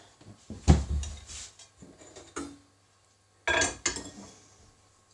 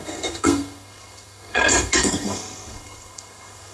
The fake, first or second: second